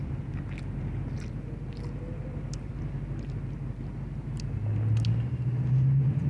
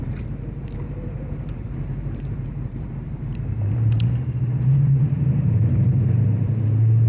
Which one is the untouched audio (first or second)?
first